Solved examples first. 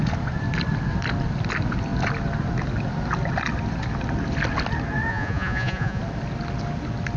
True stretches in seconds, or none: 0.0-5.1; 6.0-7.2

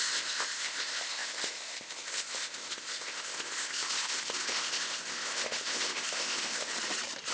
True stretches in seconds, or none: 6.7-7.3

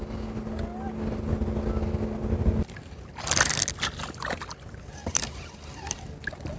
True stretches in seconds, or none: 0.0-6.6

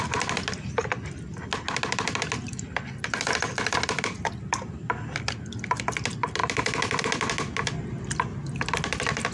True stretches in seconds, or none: 0.0-9.3

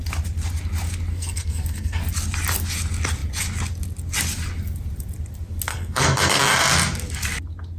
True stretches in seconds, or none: 0.0-1.1; 2.0-5.7; 6.4-7.8